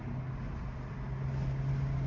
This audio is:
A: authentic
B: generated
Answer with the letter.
A